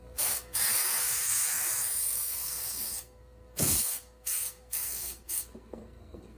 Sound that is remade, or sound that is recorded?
remade